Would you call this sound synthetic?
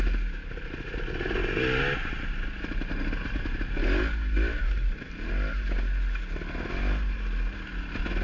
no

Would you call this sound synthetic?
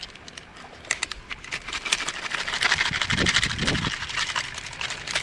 yes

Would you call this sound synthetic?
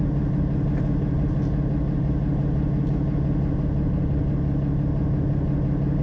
no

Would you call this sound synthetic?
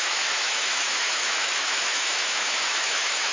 yes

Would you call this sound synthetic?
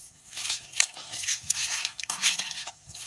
yes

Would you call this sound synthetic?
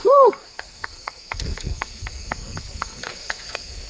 yes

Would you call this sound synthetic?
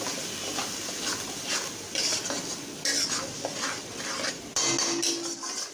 no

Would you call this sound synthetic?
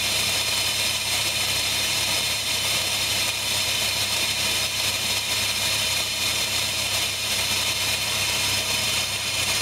yes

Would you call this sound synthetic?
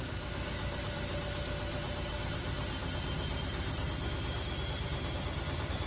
no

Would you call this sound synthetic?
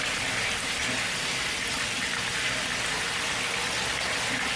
no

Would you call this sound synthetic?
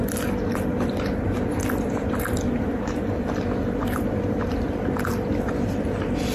yes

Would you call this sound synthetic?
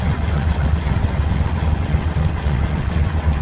yes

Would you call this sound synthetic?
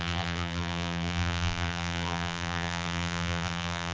yes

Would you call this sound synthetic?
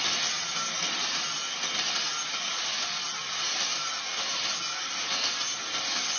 no